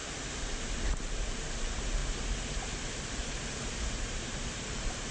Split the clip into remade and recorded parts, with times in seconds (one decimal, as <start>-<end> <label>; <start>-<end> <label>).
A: 0.0-0.8 recorded; 0.8-2.0 remade; 2.0-3.2 recorded; 3.2-5.1 remade

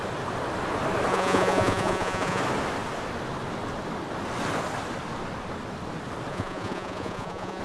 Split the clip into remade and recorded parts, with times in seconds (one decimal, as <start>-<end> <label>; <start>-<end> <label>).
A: 0.0-1.1 recorded; 1.1-2.4 remade; 2.4-6.3 recorded; 6.3-7.6 remade

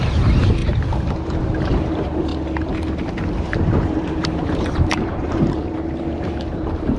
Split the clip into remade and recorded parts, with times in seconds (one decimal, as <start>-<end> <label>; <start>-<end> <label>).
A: 0.0-0.6 remade; 0.6-1.5 recorded; 1.5-2.3 remade; 2.3-3.1 recorded; 3.1-7.0 remade